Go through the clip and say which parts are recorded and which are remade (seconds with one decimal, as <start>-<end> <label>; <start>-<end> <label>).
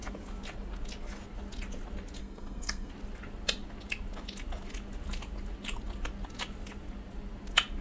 0.0-2.2 recorded; 2.2-2.9 remade; 2.9-7.8 recorded